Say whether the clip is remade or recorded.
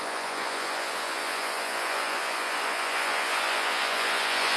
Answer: remade